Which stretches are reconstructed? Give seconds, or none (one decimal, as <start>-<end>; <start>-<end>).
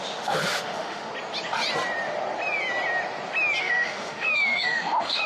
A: 0.0-1.1; 3.6-5.3